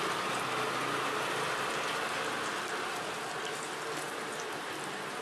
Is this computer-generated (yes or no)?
no